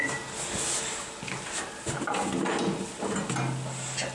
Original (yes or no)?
yes